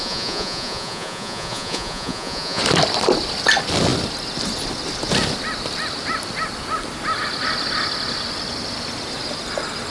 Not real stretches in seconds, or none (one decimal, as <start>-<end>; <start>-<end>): 0.0-2.6